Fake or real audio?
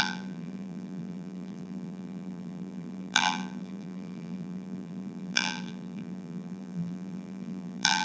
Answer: fake